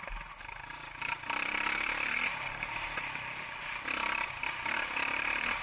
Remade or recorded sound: recorded